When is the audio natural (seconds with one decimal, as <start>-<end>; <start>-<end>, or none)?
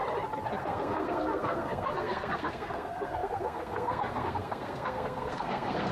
0.0-0.6